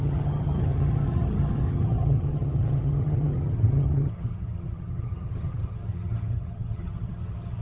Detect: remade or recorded remade